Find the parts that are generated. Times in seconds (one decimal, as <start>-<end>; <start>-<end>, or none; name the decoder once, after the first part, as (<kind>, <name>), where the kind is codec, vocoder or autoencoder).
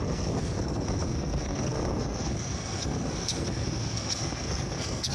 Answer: 0.0-5.1 (codec, SNAC)